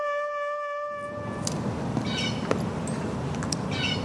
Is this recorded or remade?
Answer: recorded